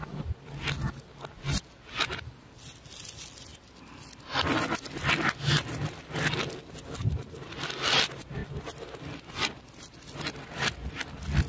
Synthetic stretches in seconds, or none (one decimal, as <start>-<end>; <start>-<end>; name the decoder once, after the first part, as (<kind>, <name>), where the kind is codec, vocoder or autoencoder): none